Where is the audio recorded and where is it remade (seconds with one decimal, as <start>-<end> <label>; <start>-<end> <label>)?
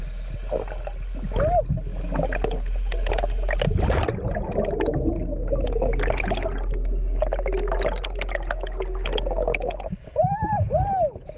0.0-11.4 recorded